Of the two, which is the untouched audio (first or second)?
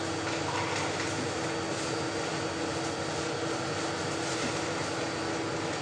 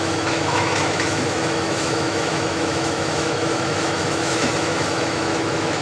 first